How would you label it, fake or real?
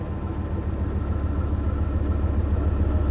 real